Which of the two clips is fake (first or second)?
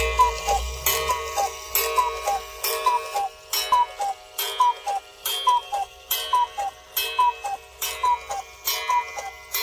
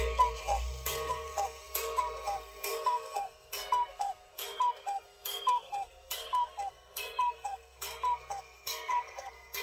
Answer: second